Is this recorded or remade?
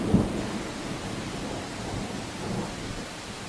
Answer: recorded